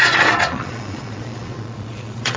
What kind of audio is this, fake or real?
fake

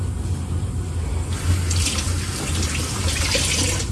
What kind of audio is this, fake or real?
real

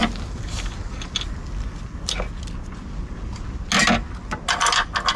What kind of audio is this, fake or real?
real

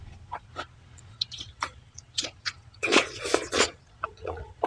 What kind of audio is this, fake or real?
fake